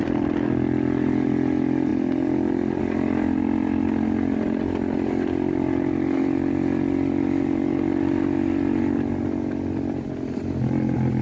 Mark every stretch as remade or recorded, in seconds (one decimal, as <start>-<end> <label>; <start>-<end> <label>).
0.0-11.2 recorded